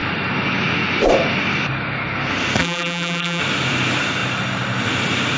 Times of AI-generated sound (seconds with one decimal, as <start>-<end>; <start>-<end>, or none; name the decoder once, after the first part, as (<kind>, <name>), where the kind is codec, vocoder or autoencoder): 2.6-3.4 (vocoder, BigVGAN v2)